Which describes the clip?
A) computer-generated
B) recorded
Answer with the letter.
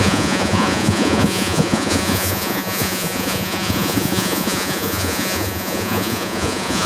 A